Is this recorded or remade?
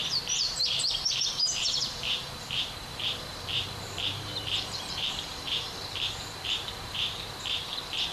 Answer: remade